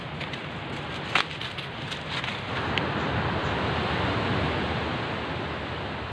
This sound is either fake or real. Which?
real